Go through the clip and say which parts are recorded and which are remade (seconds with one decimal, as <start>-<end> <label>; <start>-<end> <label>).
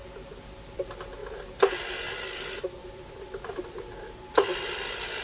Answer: 0.0-5.2 recorded